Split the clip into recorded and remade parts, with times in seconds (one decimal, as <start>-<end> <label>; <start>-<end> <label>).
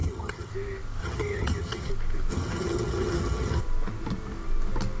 0.0-0.5 remade; 0.5-1.0 recorded; 1.0-1.9 remade; 1.9-2.3 recorded; 2.3-3.6 remade; 3.6-5.0 recorded